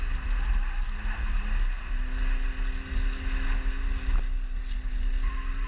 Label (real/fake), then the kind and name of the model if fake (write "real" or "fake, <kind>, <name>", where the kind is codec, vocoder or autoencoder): real